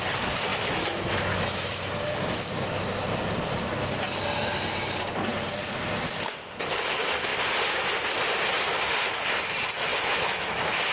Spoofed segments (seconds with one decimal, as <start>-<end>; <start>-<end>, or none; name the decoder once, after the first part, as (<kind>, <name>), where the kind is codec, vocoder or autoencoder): 0.5-1.9 (autoencoder, DAC-VAE); 9.9-10.9